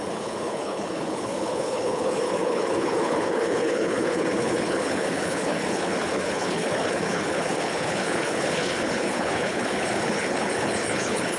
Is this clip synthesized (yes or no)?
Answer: yes